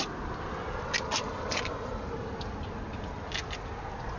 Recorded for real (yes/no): yes